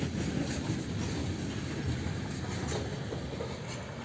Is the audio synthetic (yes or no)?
no